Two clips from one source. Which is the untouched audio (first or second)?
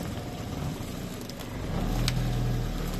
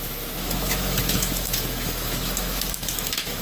first